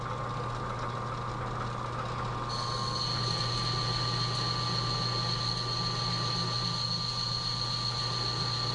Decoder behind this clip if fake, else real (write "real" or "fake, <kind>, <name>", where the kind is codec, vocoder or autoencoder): real